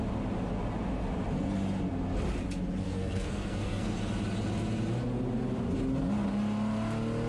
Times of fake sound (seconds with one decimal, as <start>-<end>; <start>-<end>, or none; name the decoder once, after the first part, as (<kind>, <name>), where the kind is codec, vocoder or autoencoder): 2.8-4.0 (codec, SNAC)